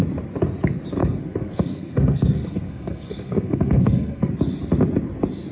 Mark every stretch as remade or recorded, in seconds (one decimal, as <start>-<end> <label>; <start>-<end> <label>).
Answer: 0.0-1.0 recorded; 1.0-4.3 remade; 4.3-5.5 recorded